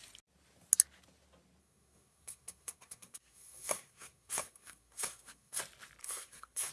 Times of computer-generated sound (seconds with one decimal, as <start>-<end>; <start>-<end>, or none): 1.6-5.6; 6.0-6.7